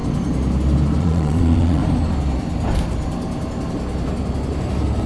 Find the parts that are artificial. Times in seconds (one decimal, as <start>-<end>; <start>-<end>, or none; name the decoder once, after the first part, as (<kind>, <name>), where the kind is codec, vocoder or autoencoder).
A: 1.0-1.8 (vocoder, Vocos)